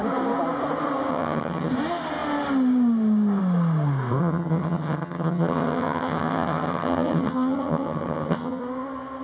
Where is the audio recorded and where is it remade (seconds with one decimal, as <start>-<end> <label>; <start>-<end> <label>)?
0.0-1.1 recorded; 1.1-1.7 remade; 1.7-4.2 recorded; 4.2-8.6 remade; 8.6-9.2 recorded